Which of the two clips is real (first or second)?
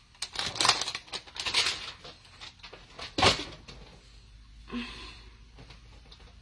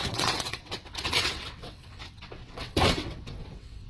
first